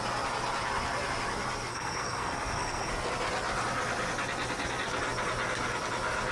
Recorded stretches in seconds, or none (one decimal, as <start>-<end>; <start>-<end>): 0.0-1.7; 2.9-6.3